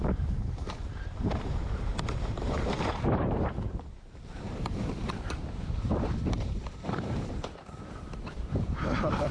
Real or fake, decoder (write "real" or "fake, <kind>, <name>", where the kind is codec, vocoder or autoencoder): fake, vocoder, BigVGAN v2